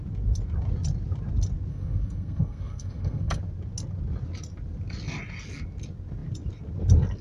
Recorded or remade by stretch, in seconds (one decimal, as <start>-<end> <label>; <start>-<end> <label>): 0.0-1.7 recorded; 1.7-3.4 remade; 3.4-7.2 recorded